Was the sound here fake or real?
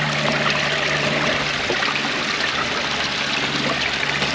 real